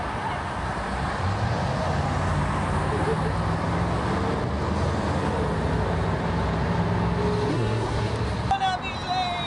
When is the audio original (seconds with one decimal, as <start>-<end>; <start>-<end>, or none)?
0.0-7.5; 8.1-9.5

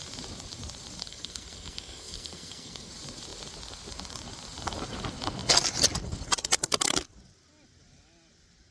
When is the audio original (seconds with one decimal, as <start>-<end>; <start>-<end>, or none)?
0.0-1.0; 2.9-8.7

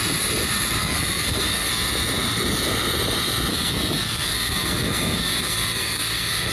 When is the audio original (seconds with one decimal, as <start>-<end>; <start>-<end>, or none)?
0.0-0.8; 1.7-3.5

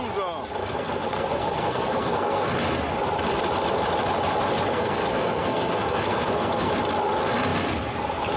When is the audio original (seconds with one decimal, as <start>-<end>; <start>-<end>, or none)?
0.0-0.6; 2.5-4.7; 6.7-8.4

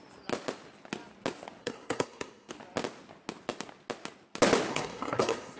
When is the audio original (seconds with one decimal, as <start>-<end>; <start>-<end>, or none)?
0.0-1.6; 2.5-4.7

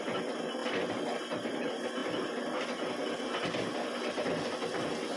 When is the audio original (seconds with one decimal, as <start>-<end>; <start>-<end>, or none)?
0.0-5.2

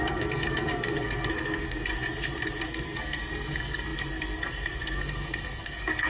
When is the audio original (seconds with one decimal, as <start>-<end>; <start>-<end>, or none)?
1.9-2.7

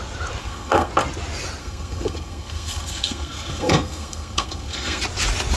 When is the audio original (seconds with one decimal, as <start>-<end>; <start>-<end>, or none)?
0.0-0.4; 0.9-1.6; 5.0-5.6